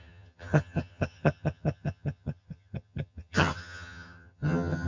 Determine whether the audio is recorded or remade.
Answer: remade